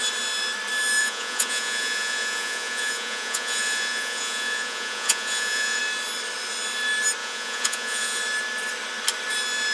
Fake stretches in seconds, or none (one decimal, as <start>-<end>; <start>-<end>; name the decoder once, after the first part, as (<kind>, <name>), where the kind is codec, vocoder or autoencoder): 1.0-5.8 (vocoder, Vocos); 7.2-8.2